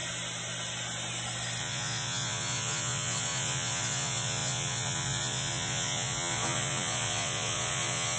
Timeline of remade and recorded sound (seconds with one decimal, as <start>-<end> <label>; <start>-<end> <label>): 0.0-1.6 recorded; 1.6-8.2 remade